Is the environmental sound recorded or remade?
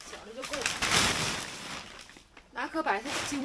remade